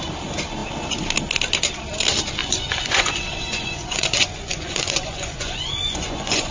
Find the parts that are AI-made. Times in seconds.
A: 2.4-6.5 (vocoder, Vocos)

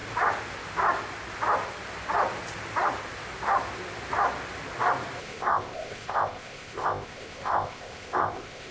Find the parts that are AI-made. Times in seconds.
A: 5.2-8.7 (codec, ZipCodec)